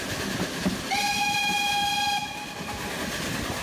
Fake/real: real